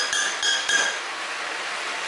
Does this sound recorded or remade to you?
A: remade